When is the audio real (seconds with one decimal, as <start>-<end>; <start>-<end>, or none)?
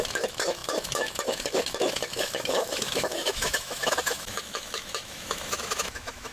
none